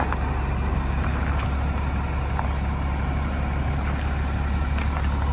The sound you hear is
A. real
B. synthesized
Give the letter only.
A